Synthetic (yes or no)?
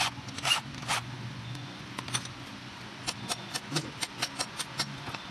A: yes